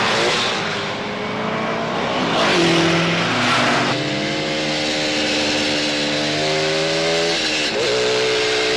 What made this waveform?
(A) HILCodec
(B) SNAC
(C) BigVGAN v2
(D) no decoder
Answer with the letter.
D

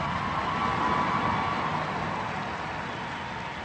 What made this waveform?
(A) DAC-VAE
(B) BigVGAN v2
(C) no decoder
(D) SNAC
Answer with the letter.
C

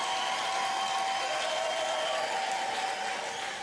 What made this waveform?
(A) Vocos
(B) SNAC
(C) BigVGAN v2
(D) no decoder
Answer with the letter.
D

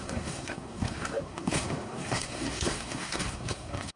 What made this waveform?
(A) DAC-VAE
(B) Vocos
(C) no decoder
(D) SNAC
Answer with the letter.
D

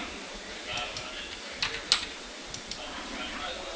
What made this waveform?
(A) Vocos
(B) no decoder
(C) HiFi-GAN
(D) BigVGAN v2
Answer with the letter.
B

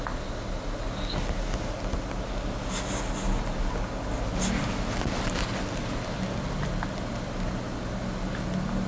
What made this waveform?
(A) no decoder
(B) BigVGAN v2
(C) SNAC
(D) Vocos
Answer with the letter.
A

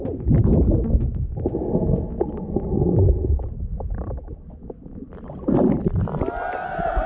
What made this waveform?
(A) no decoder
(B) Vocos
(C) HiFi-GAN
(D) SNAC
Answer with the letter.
A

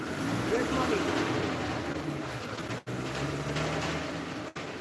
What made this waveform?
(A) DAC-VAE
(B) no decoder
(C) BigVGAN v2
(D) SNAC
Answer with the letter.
B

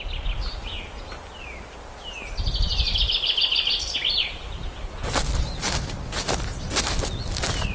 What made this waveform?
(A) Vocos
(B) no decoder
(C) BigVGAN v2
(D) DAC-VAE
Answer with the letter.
B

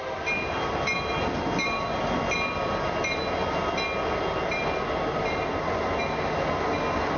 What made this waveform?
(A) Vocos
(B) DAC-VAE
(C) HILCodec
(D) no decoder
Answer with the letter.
D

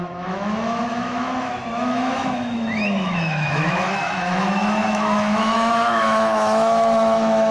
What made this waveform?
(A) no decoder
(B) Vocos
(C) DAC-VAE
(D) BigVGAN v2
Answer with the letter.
C